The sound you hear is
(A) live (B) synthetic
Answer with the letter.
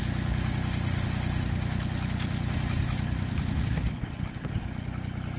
A